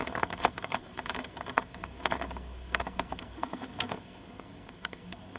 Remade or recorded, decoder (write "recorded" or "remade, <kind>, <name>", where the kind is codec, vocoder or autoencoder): remade, codec, SNAC